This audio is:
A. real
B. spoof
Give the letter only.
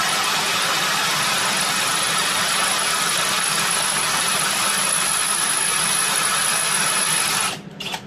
A